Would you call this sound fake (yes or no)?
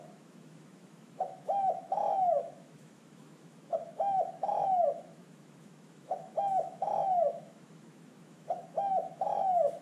yes